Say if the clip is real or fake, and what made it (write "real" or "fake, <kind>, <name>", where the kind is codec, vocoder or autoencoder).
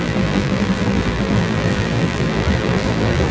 fake, vocoder, BigVGAN v2